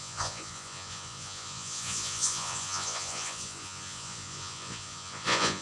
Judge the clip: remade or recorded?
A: remade